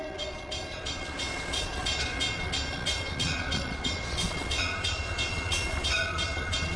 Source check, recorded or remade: remade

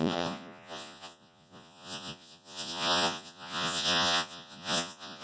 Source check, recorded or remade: remade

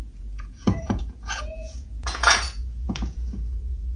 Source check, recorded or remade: remade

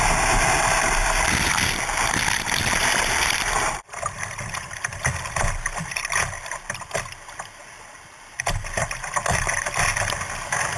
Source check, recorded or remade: recorded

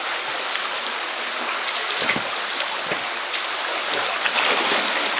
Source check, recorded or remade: recorded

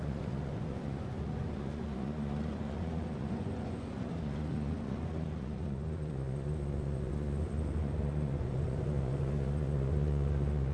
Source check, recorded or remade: remade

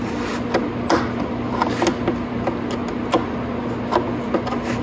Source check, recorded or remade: recorded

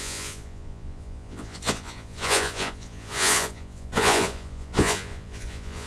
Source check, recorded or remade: remade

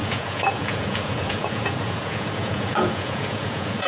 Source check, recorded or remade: remade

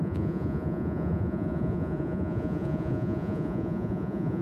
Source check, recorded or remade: remade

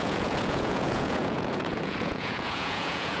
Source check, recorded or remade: remade